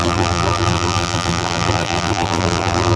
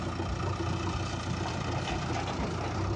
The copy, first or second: first